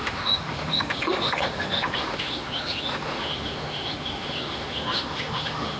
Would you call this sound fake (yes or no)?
yes